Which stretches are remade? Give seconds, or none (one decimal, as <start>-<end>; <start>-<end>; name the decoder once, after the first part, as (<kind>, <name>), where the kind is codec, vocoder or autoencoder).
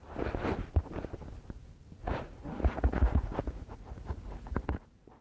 2.0-5.2 (vocoder, Vocos)